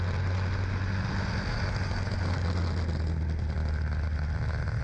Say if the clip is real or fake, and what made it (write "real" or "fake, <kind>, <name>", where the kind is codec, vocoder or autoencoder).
real